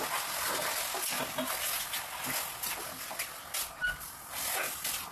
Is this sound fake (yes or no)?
no